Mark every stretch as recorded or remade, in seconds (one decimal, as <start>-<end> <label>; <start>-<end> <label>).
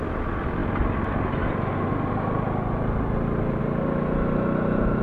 0.0-5.0 recorded